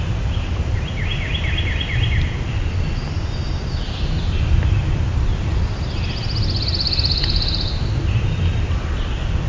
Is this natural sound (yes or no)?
yes